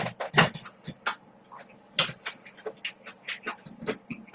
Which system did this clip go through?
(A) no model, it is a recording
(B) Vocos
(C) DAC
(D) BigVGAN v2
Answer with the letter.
D